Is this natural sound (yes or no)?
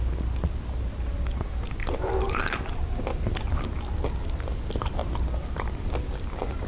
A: yes